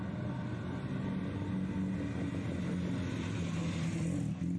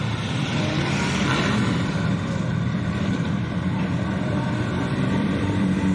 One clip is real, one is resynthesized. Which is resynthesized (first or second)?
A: second